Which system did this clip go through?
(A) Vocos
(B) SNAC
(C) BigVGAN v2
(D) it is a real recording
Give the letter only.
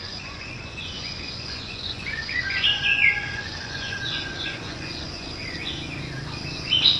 A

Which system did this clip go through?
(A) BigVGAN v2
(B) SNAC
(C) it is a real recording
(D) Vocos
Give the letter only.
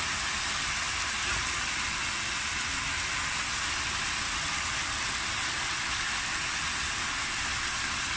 C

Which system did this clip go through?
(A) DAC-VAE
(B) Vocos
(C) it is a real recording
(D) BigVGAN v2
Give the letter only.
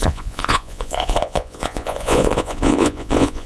B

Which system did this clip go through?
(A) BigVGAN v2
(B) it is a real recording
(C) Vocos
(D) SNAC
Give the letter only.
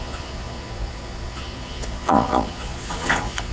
C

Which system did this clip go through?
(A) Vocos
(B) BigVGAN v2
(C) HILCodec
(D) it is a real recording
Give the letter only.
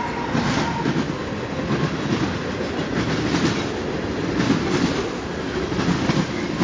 D